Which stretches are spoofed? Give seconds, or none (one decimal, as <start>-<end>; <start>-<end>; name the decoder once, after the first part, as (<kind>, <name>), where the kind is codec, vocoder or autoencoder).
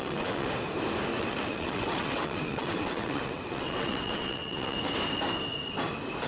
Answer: 0.0-0.5 (vocoder, WaveNeXt); 1.1-4.9